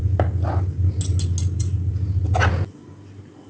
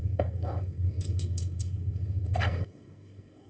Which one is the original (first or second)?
first